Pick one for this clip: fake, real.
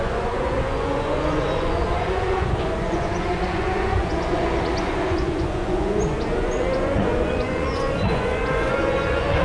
fake